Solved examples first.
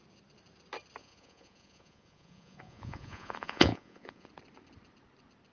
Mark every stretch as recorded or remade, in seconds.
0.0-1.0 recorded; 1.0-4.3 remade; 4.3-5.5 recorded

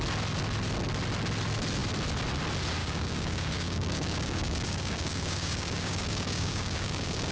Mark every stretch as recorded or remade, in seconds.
0.0-2.8 recorded; 2.8-7.3 remade

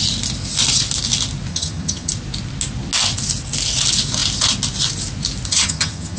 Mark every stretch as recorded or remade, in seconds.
0.0-1.5 recorded; 1.5-2.1 remade; 2.1-5.5 recorded; 5.5-6.2 remade

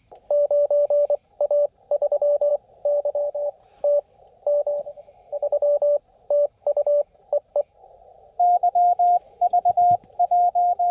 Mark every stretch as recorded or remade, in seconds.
0.0-10.9 recorded

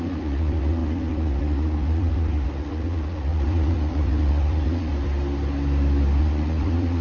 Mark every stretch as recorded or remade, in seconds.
0.0-4.9 remade; 4.9-6.2 recorded; 6.2-7.0 remade

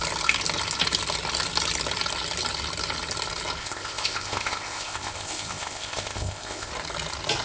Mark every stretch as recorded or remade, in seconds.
0.0-3.6 recorded; 3.6-6.7 remade; 6.7-7.4 recorded

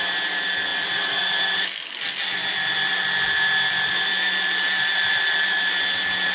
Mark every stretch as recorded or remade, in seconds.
0.0-6.3 recorded

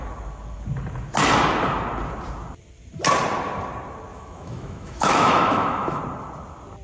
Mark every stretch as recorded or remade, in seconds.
0.0-4.1 recorded; 4.1-6.0 remade; 6.0-6.8 recorded